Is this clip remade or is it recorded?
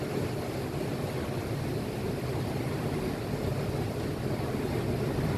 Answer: recorded